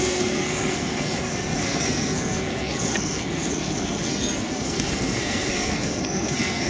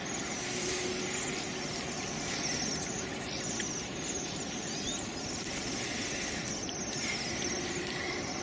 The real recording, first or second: second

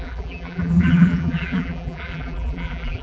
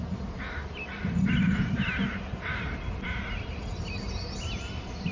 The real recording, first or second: second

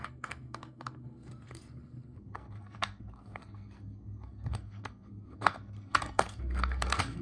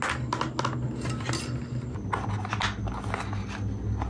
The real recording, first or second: second